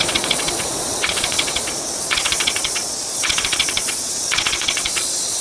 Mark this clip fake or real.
fake